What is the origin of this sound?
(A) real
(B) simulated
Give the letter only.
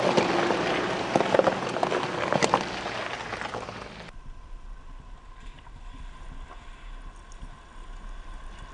A